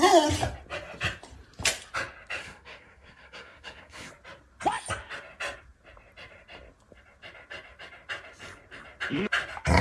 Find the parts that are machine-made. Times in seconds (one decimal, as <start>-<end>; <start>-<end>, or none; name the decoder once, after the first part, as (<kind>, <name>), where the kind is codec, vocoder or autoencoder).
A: 2.4-4.1 (codec, SNAC)